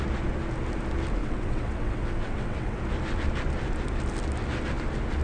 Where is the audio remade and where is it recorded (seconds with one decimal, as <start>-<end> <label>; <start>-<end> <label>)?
0.0-1.2 recorded; 1.2-2.8 remade; 2.8-5.2 recorded